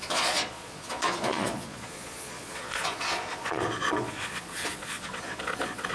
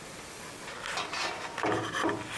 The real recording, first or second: second